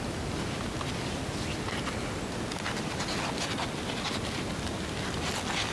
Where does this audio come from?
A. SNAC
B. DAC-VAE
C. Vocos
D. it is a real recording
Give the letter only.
D